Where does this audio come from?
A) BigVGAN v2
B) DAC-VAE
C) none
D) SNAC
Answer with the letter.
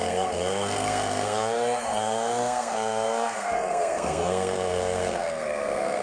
D